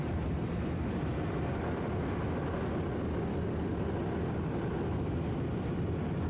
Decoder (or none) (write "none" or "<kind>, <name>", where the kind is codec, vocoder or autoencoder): none